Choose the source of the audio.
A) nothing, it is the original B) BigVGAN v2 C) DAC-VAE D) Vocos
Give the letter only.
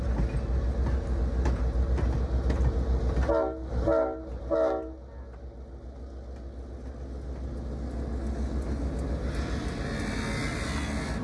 A